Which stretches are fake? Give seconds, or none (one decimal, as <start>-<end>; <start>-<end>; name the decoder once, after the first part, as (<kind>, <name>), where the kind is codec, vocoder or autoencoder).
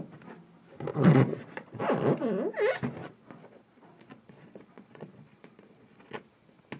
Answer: 0.9-1.8 (vocoder, Vocos); 3.0-6.2